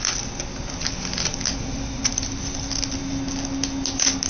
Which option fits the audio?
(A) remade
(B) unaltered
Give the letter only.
B